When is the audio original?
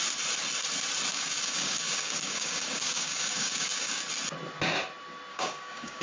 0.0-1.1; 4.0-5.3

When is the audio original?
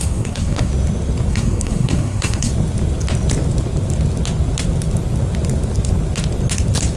0.7-1.3; 2.5-7.0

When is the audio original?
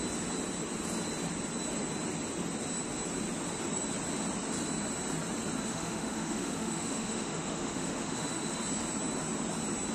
0.0-5.6; 8.6-9.9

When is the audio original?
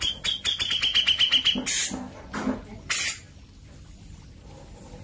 0.0-5.0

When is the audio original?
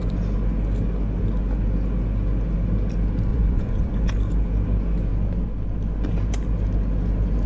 0.0-3.3; 4.1-7.5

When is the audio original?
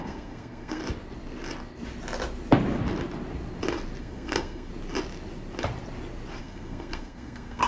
0.8-4.0; 4.7-6.4